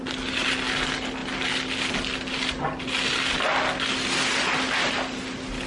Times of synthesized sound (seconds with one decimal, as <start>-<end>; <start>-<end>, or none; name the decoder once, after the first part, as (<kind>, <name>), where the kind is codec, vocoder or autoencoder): none